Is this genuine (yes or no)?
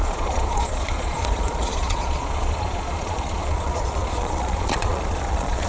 no